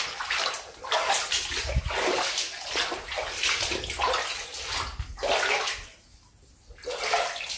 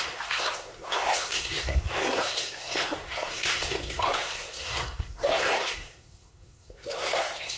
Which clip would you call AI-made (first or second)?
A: second